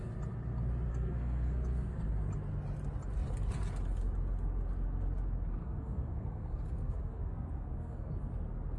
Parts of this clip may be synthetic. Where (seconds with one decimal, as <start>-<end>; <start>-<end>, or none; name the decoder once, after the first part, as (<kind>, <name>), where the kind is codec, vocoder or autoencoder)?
0.9-2.1 (codec, SNAC); 5.6-8.3